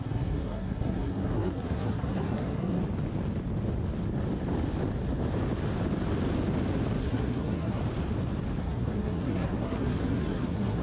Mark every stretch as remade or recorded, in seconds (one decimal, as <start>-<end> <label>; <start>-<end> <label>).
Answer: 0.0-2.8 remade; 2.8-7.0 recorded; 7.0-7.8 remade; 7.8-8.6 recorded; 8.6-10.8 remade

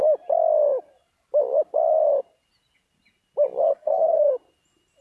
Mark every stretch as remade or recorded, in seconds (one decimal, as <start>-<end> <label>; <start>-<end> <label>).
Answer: 0.0-3.6 recorded; 3.6-4.3 remade; 4.3-5.0 recorded

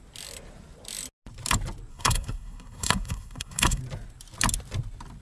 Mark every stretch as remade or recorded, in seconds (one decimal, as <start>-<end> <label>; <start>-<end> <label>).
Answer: 0.0-1.9 recorded; 1.9-3.8 remade; 3.8-5.2 recorded

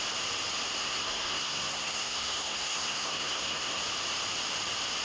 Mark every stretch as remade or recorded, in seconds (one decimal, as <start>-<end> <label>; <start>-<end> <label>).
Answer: 0.0-0.8 recorded; 0.8-3.8 remade; 3.8-5.0 recorded